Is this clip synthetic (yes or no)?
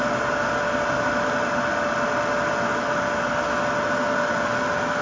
no